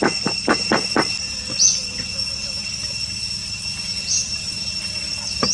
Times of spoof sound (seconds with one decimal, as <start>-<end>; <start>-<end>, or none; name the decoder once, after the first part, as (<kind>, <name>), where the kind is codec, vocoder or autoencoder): none